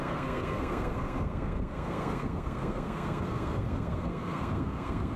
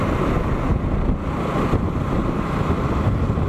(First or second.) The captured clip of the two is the second